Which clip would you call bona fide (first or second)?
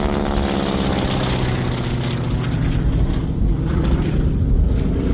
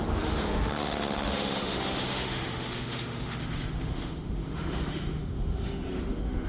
first